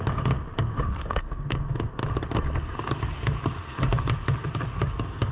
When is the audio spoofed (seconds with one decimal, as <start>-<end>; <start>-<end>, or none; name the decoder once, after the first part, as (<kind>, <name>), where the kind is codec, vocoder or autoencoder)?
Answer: 0.0-2.0 (codec, DAC); 4.8-5.3

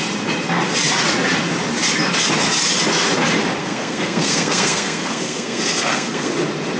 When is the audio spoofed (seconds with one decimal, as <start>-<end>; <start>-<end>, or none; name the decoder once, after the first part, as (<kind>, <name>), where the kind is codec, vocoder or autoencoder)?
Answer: 3.6-6.3 (codec, SNAC)

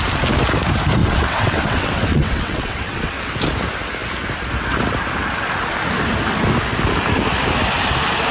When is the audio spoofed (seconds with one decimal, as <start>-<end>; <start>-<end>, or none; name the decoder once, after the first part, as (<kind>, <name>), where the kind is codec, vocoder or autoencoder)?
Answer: 1.0-3.2 (vocoder, WaveNeXt)